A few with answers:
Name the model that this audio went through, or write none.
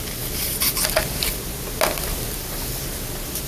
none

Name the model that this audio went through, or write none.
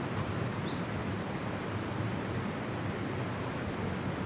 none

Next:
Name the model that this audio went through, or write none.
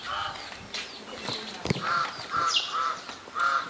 none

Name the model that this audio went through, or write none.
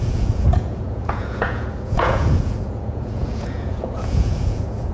vocoder, Vocos